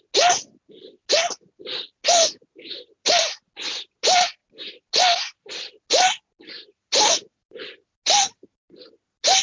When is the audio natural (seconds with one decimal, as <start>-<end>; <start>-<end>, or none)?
0.0-9.4